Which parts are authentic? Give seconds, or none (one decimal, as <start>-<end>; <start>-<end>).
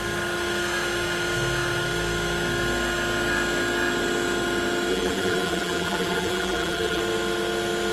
0.0-4.9; 7.0-7.9